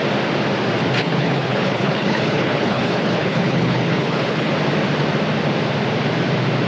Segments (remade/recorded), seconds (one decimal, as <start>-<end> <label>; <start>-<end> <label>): 0.0-1.0 recorded; 1.0-4.5 remade; 4.5-6.7 recorded